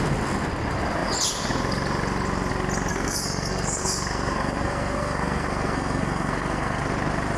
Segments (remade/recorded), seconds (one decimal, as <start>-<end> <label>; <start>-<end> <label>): 0.0-2.9 recorded; 2.9-6.8 remade; 6.8-7.4 recorded